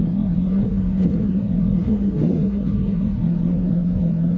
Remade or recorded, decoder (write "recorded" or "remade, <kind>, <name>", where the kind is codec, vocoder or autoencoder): remade, codec, SNAC